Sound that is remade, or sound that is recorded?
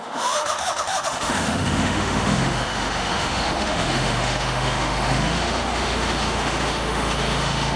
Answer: remade